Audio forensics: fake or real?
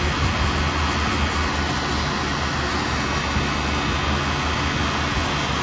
real